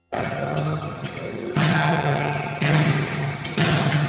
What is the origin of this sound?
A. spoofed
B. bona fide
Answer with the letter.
A